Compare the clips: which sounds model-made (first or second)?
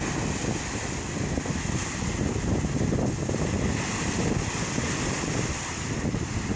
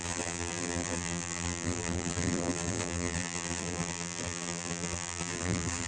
second